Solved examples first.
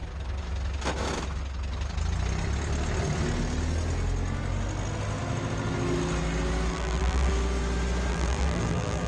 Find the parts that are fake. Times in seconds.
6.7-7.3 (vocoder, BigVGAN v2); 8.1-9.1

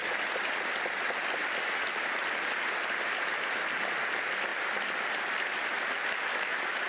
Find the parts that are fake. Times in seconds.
0.0-2.0 (vocoder, BigVGAN v2); 4.5-6.2

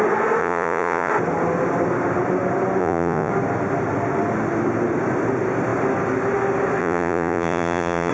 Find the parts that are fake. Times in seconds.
0.4-1.1 (vocoder, Vocos); 2.8-3.3; 6.8-8.1